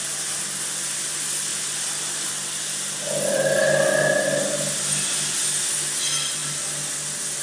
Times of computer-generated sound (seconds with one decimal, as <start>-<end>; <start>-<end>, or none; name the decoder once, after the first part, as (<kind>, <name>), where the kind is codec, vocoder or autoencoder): none